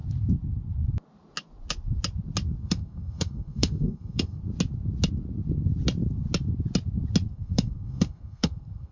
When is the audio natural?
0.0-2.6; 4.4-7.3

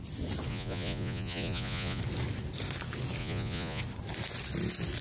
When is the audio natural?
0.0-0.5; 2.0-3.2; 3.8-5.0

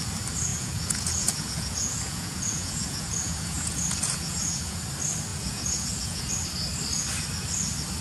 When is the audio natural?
0.0-0.5; 4.8-5.3; 6.3-8.0

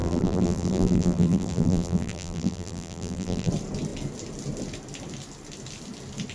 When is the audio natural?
3.5-6.3